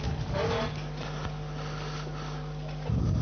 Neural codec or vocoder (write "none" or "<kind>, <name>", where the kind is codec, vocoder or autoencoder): none